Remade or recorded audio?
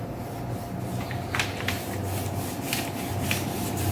remade